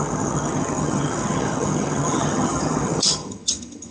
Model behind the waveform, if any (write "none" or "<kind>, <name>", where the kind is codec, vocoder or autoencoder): vocoder, HiFi-GAN